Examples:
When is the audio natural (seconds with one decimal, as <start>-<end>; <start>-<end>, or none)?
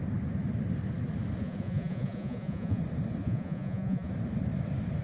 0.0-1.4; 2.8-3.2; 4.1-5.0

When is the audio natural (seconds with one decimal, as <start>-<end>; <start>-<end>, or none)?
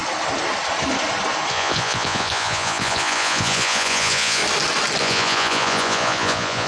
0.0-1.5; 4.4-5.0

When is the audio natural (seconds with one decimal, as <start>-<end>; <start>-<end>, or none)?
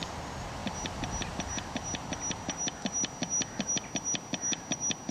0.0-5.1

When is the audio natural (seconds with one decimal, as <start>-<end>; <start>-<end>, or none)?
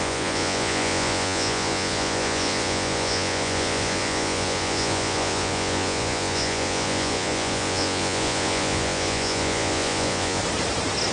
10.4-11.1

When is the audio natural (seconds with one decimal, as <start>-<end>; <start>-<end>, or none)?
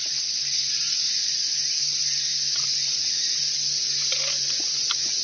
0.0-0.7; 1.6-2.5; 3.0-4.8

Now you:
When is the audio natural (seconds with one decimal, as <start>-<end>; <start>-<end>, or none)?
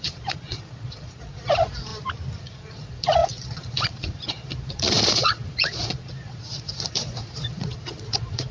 1.9-2.4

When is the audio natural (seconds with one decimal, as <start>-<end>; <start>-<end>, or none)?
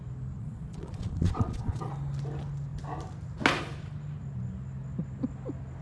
0.0-0.4; 1.9-5.8